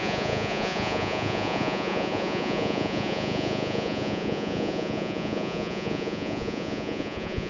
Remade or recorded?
remade